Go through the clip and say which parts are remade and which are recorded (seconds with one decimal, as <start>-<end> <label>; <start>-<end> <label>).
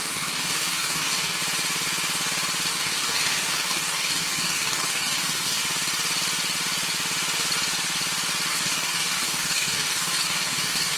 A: 0.0-1.4 remade; 1.4-2.7 recorded; 2.7-5.6 remade; 5.6-8.5 recorded; 8.5-11.0 remade